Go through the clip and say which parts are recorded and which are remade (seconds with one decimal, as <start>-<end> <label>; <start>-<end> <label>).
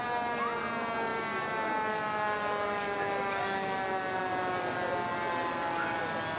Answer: 0.0-6.4 recorded